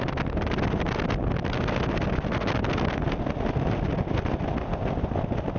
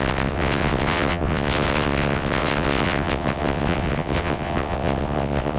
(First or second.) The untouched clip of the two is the first